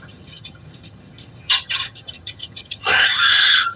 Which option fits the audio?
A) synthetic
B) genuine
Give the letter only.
A